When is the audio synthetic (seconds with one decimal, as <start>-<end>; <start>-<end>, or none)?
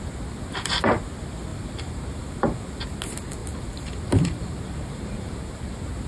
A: 1.5-2.8; 3.4-5.6